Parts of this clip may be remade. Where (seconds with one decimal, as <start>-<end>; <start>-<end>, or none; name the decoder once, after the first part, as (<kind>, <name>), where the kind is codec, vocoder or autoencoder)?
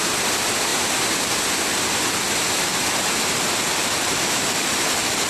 0.0-2.7 (vocoder, BigVGAN v2); 4.1-5.3